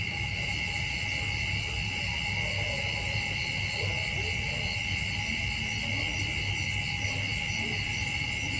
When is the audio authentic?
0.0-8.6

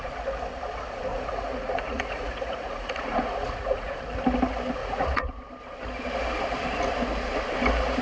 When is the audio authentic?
0.0-1.1; 4.0-4.8; 5.4-8.0

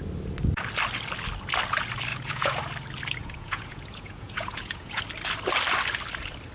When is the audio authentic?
0.0-2.1; 2.6-3.2; 5.0-6.5

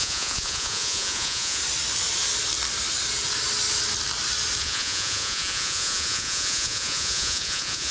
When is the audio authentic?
1.6-4.6

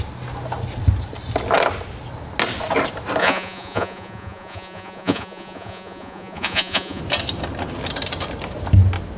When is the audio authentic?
0.0-3.2; 7.0-9.2

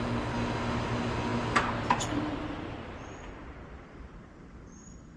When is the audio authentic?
0.0-5.2

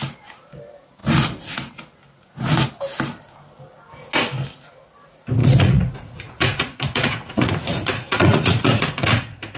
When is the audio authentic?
0.0-5.4